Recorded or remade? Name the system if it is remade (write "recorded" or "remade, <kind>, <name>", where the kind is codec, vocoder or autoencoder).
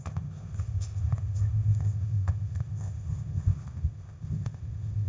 remade, codec, ZipCodec